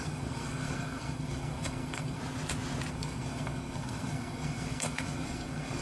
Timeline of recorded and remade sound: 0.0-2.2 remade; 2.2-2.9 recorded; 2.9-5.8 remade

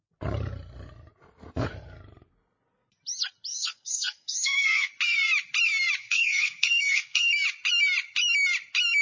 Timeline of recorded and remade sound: 0.0-3.5 recorded; 3.5-4.9 remade; 4.9-6.0 recorded; 6.0-7.3 remade; 7.3-9.0 recorded